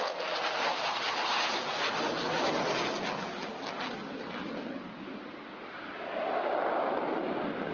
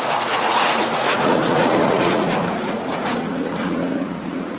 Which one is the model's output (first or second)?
second